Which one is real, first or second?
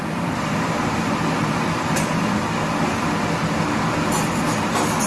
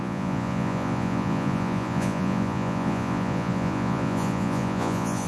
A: first